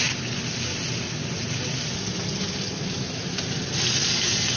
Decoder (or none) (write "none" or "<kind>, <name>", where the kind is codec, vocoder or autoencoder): none